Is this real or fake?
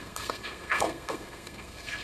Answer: fake